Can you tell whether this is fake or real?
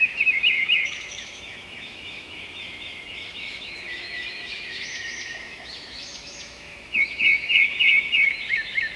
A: fake